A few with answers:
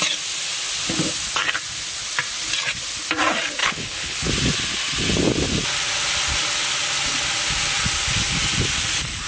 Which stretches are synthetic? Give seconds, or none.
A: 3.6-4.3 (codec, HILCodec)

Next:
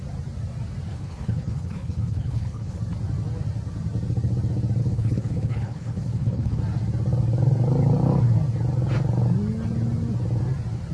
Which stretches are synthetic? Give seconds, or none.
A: 0.9-2.8 (codec, HILCodec); 4.8-6.6

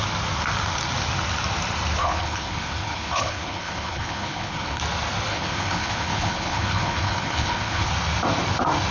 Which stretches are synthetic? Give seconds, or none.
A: 2.0-4.8 (codec, HILCodec); 5.3-7.9

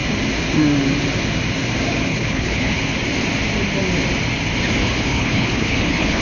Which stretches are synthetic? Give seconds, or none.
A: 2.1-2.8 (codec, HILCodec); 4.8-6.2

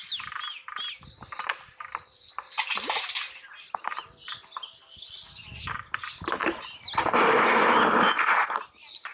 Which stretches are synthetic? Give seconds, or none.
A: none

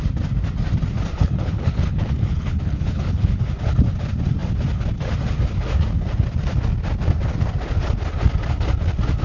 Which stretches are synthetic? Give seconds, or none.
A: 1.2-3.4 (codec, HILCodec)

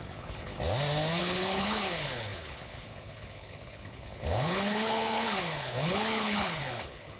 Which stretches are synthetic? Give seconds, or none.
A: 0.0-0.5 (codec, HILCodec); 1.2-7.2